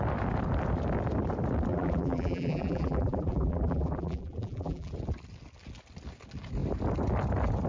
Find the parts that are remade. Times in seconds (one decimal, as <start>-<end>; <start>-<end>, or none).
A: 1.7-4.9